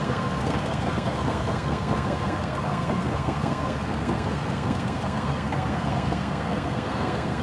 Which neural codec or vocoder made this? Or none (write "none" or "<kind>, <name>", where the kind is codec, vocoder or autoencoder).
codec, SNAC